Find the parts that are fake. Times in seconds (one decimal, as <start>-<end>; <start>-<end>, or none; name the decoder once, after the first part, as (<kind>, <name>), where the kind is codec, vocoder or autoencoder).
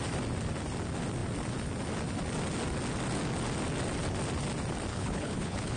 4.9-5.8 (codec, HILCodec)